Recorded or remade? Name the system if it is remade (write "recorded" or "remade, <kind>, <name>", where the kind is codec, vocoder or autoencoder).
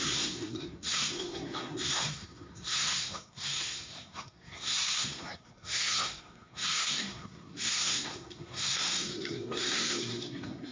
remade, codec, SNAC